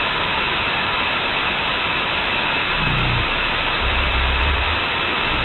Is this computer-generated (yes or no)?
yes